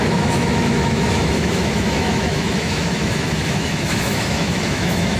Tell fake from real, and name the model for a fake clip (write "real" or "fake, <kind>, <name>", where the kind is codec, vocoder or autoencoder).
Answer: fake, autoencoder, DAC-VAE